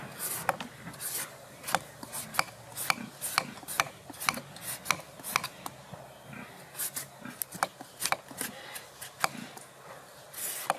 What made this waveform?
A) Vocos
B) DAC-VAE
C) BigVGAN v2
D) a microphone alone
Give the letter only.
D